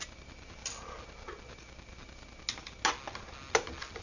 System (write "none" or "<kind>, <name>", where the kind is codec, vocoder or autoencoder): none